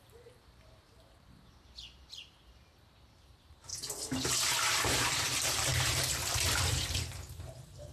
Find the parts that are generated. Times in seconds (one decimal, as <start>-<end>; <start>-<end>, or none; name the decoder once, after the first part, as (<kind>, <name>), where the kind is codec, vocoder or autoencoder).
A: 0.0-3.7 (vocoder, BigVGAN v2); 4.6-7.9